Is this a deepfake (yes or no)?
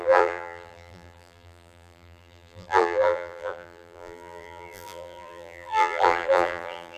yes